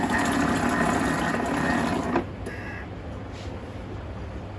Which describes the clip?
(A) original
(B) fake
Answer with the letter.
A